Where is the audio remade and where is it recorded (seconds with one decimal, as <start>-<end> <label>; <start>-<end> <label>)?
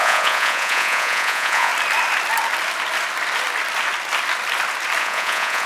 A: 0.0-1.7 remade; 1.7-5.0 recorded; 5.0-5.7 remade